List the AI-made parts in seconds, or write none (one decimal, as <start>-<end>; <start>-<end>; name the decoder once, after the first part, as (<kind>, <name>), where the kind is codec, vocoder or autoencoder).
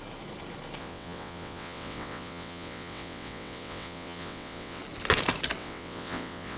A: 0.8-4.8 (vocoder, WaveNeXt); 5.6-6.6